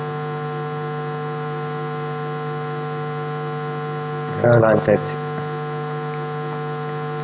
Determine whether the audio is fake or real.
real